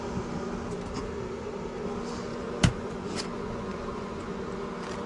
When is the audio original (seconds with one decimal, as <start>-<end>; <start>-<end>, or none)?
0.0-2.3; 4.3-5.1